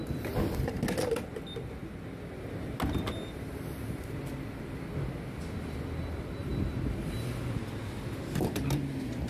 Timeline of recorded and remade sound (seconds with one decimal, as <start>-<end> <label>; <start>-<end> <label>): 0.0-6.5 recorded; 6.5-7.6 remade; 7.6-9.3 recorded